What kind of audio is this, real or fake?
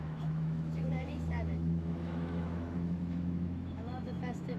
fake